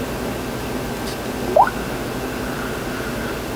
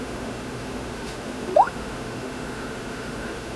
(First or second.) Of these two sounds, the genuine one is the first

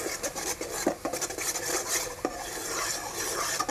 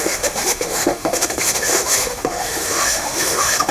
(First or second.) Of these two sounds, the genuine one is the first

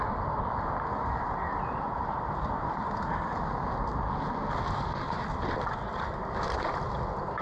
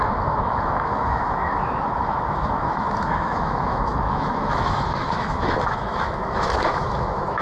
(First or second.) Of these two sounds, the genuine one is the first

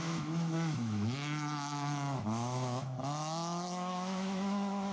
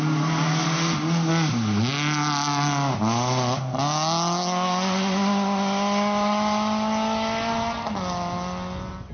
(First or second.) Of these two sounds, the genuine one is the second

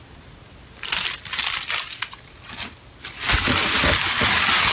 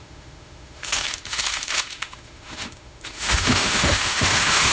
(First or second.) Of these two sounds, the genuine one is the first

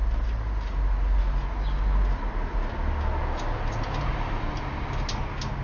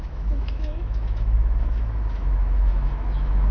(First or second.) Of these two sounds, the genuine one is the first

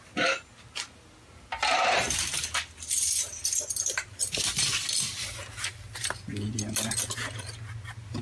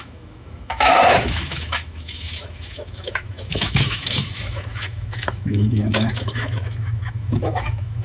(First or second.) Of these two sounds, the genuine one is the first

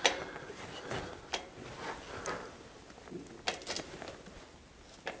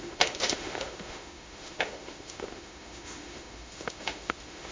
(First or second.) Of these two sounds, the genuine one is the first